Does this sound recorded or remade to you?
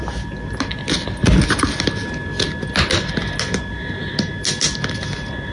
recorded